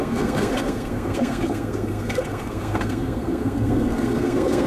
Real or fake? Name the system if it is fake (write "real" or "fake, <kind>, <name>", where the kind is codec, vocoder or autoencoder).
fake, codec, SNAC